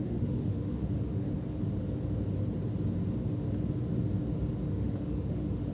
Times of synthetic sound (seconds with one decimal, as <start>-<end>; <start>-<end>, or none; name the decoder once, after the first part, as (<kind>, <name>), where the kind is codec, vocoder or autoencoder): 0.0-1.3 (autoencoder, DAC-VAE); 4.7-5.7